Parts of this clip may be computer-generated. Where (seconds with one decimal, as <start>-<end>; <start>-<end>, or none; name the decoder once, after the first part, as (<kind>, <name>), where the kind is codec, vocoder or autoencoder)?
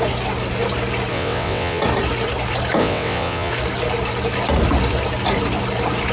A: 1.1-1.8 (vocoder, WaveNeXt); 2.8-3.5